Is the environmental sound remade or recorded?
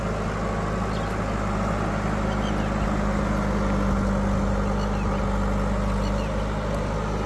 recorded